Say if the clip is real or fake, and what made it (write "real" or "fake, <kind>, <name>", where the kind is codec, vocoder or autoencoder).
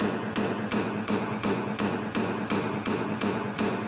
fake, vocoder, Vocos